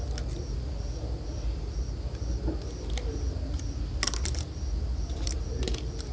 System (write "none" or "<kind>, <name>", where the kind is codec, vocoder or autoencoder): none